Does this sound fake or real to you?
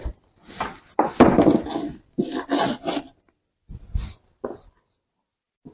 real